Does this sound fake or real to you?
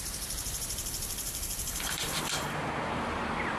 fake